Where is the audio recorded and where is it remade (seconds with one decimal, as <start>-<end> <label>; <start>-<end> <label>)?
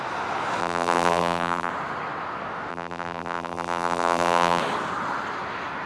0.0-0.6 recorded; 0.6-1.7 remade; 1.7-2.7 recorded; 2.7-4.6 remade; 4.6-5.9 recorded